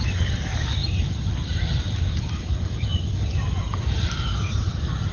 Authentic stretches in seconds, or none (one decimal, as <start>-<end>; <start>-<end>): 0.0-5.1